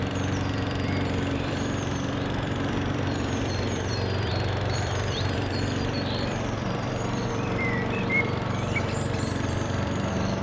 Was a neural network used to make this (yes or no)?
yes